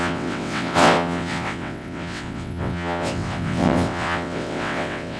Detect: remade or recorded remade